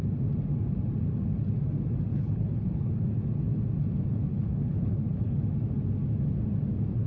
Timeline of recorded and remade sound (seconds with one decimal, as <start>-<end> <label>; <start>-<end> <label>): 0.0-2.1 recorded; 2.1-3.0 remade; 3.0-4.3 recorded; 4.3-5.4 remade; 5.4-7.1 recorded